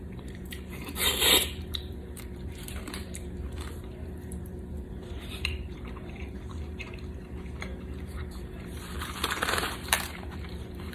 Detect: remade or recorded remade